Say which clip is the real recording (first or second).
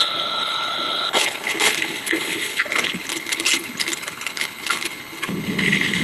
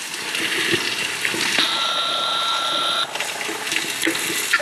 second